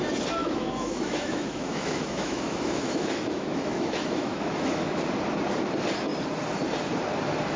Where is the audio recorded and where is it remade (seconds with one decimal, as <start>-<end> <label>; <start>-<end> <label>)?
0.0-0.4 recorded; 0.4-5.0 remade; 5.0-7.6 recorded